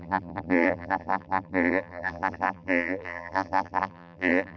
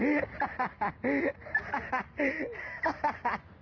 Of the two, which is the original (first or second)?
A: second